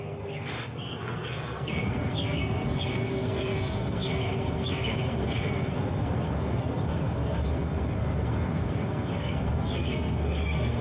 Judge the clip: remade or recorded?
remade